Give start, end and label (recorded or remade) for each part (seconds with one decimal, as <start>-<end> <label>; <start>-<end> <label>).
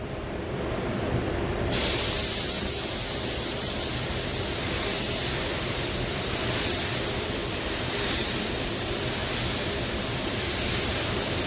0.0-9.2 remade; 9.2-9.9 recorded; 9.9-11.5 remade